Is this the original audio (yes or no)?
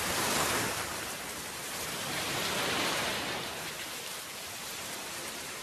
no